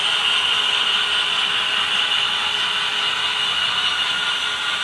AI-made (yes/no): no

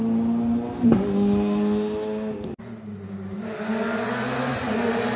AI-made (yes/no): no